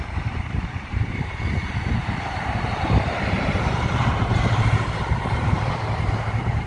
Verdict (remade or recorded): remade